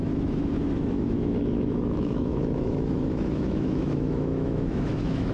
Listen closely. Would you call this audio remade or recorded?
remade